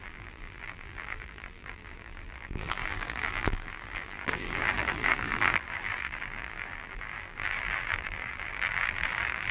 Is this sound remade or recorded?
remade